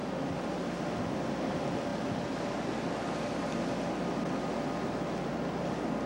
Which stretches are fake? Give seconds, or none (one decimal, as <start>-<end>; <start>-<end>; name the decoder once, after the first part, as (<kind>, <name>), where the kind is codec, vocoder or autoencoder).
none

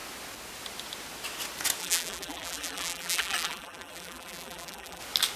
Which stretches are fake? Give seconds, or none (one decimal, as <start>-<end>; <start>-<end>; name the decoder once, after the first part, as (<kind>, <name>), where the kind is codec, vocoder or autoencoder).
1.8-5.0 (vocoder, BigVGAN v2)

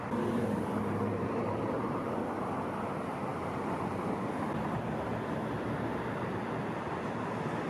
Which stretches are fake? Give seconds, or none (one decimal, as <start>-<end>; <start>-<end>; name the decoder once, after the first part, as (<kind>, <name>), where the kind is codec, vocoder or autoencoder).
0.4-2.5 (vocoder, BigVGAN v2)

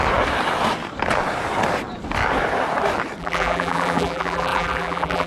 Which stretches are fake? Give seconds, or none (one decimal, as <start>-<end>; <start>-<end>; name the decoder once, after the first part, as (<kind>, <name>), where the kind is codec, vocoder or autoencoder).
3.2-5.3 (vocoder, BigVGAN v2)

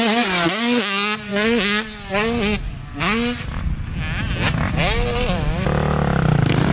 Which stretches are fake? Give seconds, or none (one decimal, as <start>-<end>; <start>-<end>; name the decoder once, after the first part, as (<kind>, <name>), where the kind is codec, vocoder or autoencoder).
none